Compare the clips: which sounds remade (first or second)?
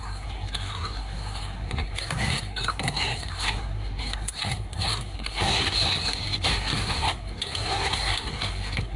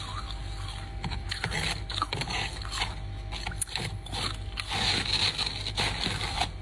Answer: first